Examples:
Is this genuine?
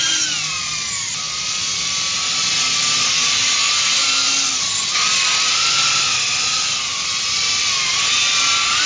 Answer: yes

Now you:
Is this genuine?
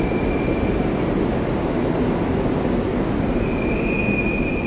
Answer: yes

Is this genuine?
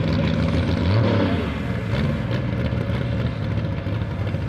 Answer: yes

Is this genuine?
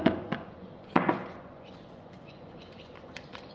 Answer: no